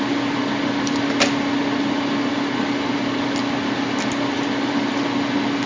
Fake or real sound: real